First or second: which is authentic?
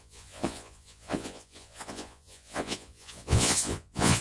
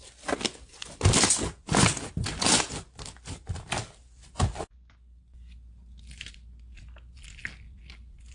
second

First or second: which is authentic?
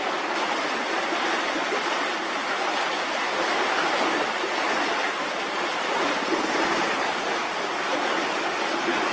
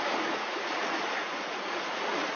first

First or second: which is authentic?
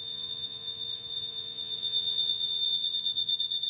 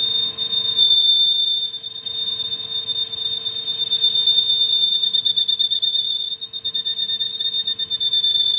second